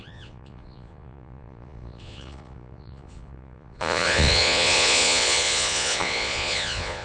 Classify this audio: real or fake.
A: fake